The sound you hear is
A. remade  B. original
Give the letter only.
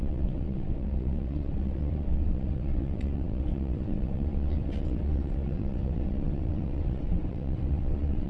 A